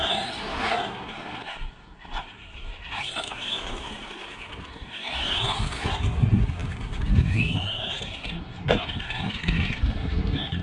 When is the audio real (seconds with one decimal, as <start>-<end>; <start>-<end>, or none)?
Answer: none